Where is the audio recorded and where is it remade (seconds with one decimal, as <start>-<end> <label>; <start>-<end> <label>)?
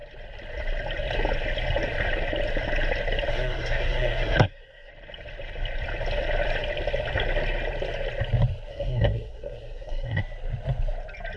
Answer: 0.0-3.3 recorded; 3.3-4.9 remade; 4.9-8.7 recorded; 8.7-10.2 remade; 10.2-11.4 recorded